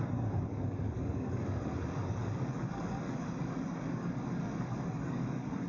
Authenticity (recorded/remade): remade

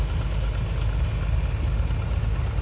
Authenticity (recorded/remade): recorded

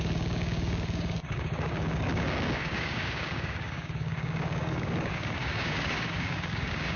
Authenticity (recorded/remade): remade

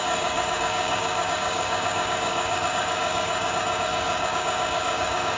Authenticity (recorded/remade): remade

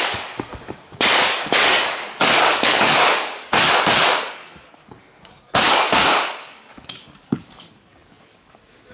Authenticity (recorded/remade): remade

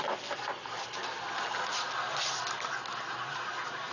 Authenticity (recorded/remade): recorded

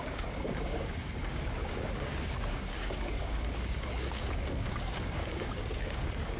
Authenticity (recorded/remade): remade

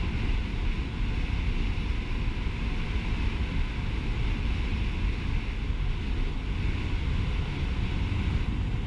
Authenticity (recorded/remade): recorded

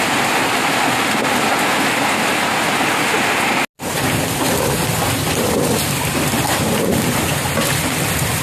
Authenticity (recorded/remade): recorded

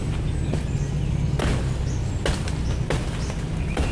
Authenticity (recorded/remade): recorded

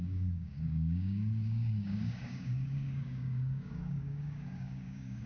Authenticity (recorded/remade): remade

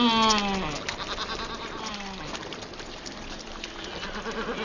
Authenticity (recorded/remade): recorded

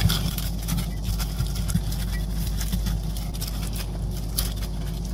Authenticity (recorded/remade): recorded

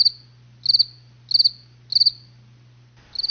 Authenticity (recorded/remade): recorded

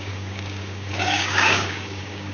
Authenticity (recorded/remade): remade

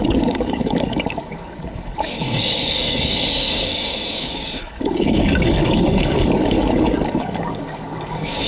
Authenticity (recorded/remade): remade